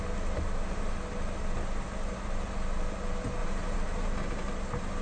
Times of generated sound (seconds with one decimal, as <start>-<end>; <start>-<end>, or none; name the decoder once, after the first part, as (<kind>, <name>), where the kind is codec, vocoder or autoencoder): 3.4-4.1 (vocoder, BigVGAN v2)